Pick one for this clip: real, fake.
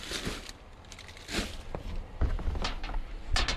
real